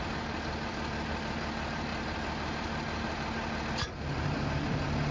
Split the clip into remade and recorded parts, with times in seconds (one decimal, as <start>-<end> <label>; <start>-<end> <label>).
0.0-1.9 remade; 1.9-5.1 recorded